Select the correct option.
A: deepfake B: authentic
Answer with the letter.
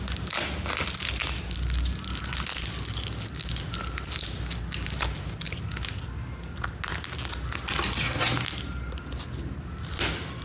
B